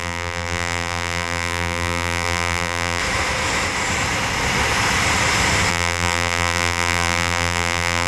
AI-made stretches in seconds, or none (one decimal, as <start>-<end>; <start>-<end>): 0.0-3.0; 5.7-8.1